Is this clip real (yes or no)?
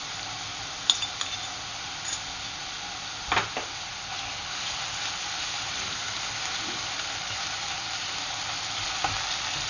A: yes